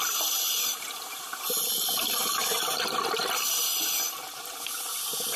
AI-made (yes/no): no